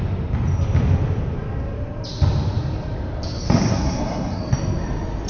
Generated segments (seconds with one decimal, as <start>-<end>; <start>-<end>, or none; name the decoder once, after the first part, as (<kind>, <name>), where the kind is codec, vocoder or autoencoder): 3.7-4.4 (codec, SNAC)